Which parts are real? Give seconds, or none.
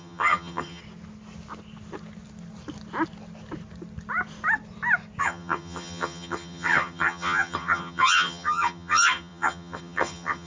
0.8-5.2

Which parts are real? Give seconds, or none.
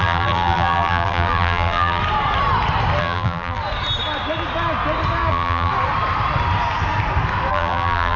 2.0-3.0; 3.6-5.3; 5.7-7.5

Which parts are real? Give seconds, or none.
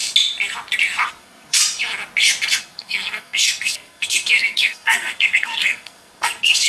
0.0-1.1; 1.6-2.6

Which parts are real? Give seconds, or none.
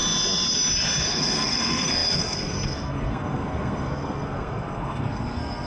0.0-1.0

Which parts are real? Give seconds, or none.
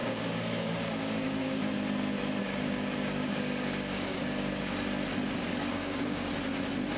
1.6-2.4; 4.6-5.4; 6.3-7.0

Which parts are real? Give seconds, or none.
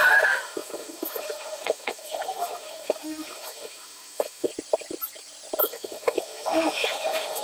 4.5-5.6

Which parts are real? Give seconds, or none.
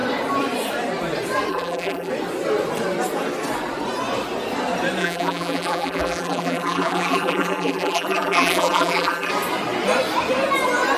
0.0-1.5; 2.1-5.0; 9.3-11.0